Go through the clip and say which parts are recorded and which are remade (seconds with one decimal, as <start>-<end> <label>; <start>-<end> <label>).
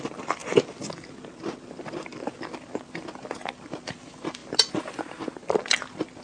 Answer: 0.0-0.4 remade; 0.4-1.7 recorded; 1.7-4.4 remade; 4.4-5.0 recorded; 5.0-6.2 remade